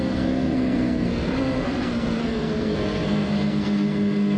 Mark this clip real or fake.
fake